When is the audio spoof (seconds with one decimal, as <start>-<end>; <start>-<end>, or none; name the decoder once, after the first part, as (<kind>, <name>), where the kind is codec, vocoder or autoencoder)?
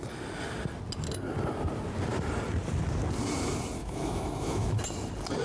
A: 3.8-4.8 (autoencoder, DAC-VAE)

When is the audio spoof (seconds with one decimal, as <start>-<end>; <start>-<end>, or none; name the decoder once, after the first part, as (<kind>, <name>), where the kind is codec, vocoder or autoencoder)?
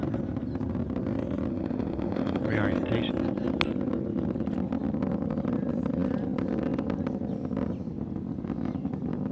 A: 1.5-2.4 (autoencoder, DAC-VAE)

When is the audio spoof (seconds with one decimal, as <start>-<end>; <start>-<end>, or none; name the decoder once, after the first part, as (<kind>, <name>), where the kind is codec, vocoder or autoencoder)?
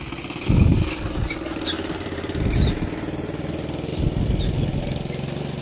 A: none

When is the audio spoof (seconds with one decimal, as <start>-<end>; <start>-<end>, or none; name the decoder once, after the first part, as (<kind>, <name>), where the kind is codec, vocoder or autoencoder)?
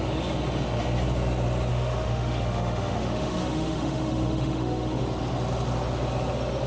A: 1.7-5.0 (autoencoder, DAC-VAE)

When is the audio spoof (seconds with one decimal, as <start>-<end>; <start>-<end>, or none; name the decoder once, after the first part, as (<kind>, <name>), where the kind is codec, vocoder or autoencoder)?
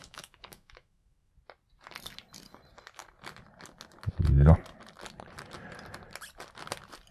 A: 0.0-1.3 (autoencoder, DAC-VAE)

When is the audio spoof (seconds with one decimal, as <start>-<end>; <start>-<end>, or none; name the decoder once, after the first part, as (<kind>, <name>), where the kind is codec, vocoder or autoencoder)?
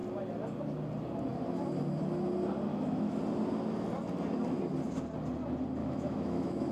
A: 2.7-3.2 (autoencoder, DAC-VAE); 5.8-6.7